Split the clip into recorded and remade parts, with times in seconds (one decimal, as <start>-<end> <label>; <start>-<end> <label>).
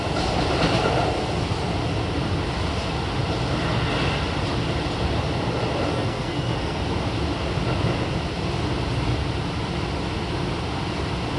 0.0-5.9 recorded; 5.9-6.8 remade; 6.8-11.4 recorded